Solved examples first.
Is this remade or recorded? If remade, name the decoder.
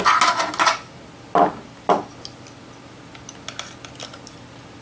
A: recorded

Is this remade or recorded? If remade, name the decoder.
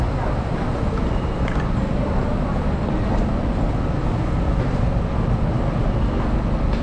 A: recorded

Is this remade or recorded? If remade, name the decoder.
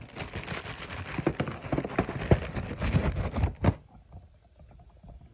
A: recorded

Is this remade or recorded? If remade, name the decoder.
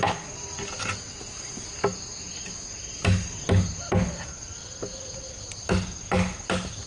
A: recorded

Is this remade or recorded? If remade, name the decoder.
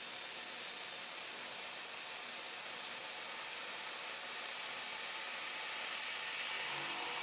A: recorded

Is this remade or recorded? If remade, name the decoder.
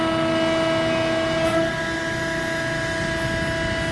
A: recorded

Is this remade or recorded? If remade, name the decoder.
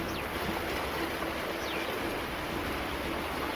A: recorded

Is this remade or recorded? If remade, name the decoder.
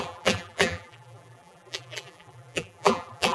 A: remade, vocoder, BigVGAN v2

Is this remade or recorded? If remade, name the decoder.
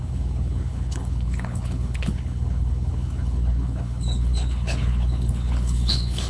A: remade, codec, HILCodec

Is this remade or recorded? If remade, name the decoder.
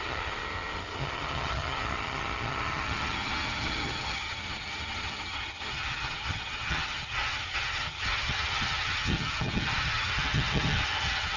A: remade, vocoder, HiFi-GAN